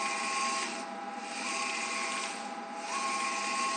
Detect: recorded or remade recorded